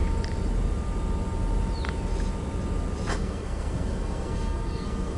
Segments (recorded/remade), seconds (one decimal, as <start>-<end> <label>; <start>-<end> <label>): 0.0-3.1 recorded; 3.1-5.2 remade